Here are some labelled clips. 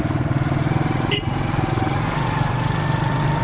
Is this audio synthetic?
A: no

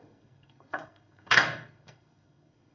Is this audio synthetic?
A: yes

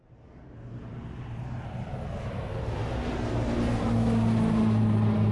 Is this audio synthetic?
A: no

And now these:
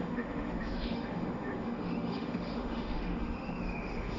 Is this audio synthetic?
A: yes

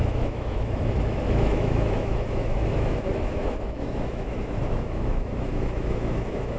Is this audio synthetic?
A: yes